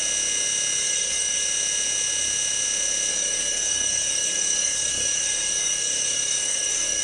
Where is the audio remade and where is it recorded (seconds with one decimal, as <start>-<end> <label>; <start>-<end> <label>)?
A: 0.0-0.8 recorded; 0.8-1.4 remade; 1.4-3.1 recorded; 3.1-7.0 remade